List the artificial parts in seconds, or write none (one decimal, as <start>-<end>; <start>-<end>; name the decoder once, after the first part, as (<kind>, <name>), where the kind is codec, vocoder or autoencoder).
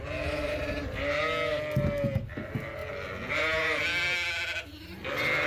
none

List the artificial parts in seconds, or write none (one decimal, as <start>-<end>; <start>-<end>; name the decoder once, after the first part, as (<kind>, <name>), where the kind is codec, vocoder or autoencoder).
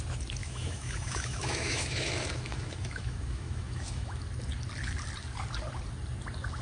0.4-4.2 (autoencoder, DAC-VAE)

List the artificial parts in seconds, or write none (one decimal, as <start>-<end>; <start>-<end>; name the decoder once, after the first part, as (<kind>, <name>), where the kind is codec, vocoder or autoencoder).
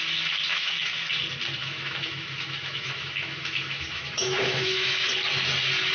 0.5-1.1 (autoencoder, DAC-VAE); 1.6-5.1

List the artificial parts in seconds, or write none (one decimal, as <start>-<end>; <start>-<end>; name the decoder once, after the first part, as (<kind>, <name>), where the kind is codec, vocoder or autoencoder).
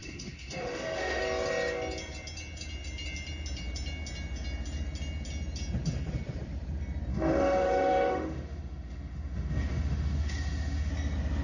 0.0-1.2 (autoencoder, DAC-VAE); 7.1-10.9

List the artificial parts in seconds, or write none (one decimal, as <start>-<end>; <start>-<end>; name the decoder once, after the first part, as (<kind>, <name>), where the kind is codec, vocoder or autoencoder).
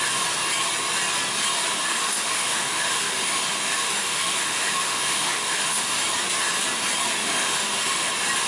1.7-6.0 (autoencoder, DAC-VAE); 7.2-8.1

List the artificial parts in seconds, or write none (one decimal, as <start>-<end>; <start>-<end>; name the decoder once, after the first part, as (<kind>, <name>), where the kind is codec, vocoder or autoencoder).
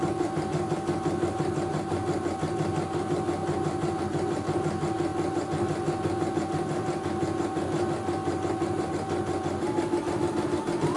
none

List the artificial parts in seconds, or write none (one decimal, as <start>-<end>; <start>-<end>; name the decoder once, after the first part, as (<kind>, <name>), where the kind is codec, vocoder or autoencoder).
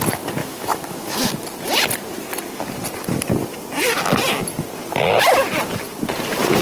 0.4-1.3 (autoencoder, DAC-VAE)